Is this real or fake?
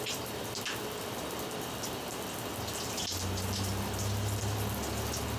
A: real